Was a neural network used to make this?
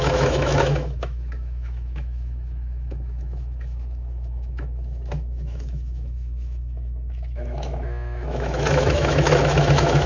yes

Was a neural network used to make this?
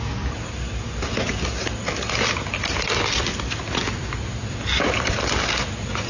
no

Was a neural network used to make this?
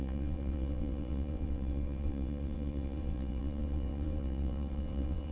yes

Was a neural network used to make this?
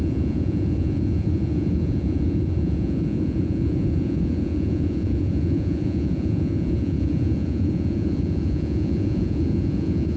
yes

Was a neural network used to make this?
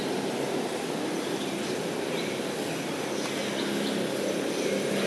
no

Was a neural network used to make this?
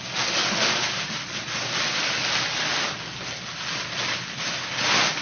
no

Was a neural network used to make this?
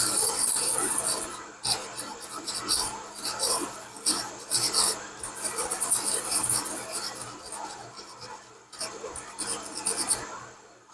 no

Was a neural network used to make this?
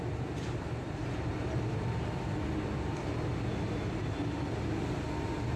no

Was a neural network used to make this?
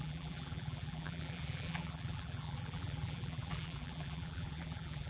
yes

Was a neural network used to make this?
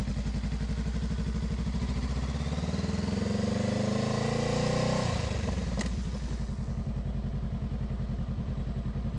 no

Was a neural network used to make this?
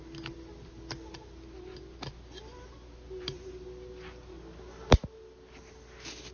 no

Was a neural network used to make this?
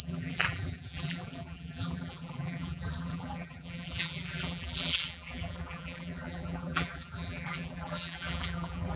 yes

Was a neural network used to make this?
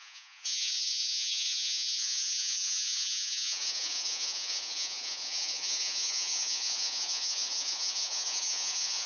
yes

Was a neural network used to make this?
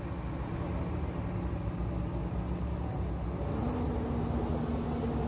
no